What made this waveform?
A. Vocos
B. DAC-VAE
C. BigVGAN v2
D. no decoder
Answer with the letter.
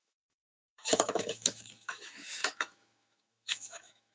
B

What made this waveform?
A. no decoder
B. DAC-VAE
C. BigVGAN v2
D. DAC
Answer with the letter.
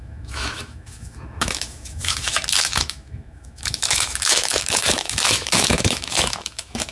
B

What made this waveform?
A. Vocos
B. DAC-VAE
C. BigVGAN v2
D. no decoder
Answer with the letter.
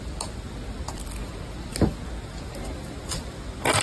D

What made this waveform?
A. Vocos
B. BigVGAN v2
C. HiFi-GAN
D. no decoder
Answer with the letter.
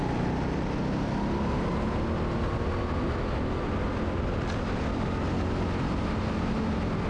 D